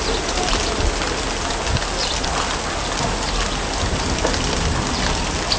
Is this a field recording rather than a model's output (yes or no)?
yes